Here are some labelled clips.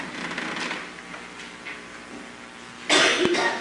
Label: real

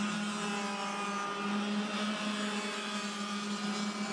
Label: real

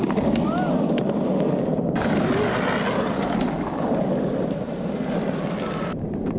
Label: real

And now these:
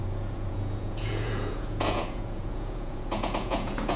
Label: fake